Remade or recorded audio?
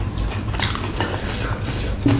recorded